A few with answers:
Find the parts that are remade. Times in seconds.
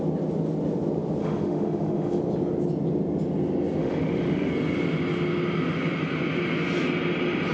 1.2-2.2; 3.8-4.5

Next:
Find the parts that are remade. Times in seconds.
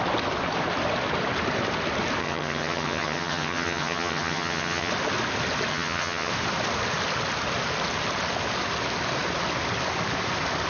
2.2-4.9; 5.7-6.3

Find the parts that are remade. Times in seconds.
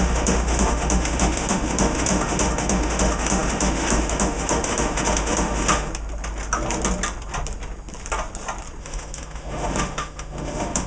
0.0-5.9; 8.8-10.9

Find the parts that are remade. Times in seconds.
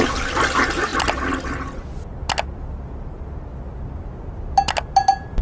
none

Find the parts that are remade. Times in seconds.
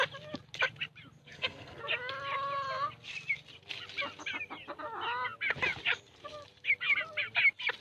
1.2-1.8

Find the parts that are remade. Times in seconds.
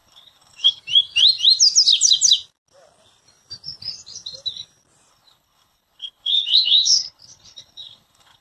0.0-0.8; 5.1-8.4